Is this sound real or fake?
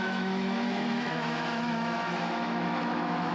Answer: fake